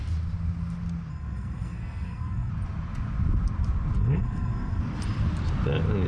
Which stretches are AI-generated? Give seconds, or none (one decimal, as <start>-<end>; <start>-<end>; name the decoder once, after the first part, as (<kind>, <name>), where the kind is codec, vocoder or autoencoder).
1.1-2.5 (codec, SNAC); 4.0-4.8